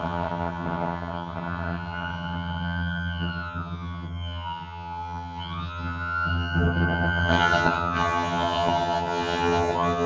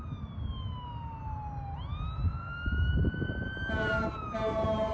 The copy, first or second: first